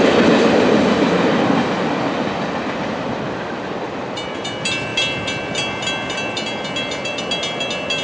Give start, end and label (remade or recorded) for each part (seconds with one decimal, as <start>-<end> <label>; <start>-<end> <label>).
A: 0.0-8.0 recorded